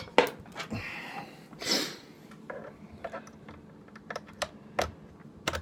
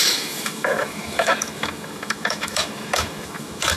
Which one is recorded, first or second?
first